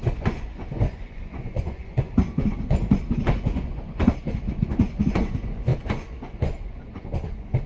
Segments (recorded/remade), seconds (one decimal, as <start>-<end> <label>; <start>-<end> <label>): 0.0-7.7 remade